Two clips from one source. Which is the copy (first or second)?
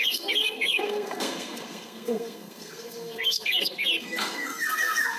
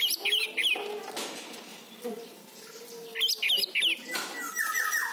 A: first